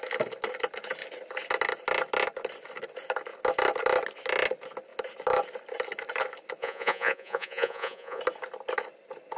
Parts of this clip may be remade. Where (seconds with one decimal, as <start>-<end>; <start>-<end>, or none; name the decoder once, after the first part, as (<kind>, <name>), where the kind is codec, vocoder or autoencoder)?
6.6-8.2 (vocoder, Vocos)